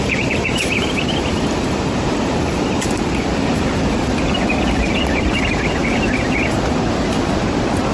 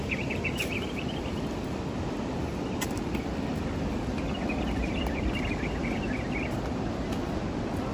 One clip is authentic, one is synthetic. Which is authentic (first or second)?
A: second